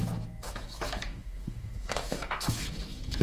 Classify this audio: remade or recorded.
remade